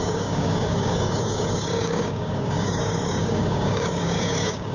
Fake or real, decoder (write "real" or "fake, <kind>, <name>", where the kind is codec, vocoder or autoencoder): fake, codec, DAC